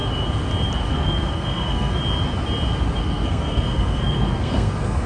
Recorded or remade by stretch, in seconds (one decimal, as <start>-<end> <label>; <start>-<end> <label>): 0.0-0.8 recorded; 0.8-2.0 remade; 2.0-3.0 recorded; 3.0-5.1 remade